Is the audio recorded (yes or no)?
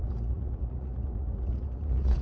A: no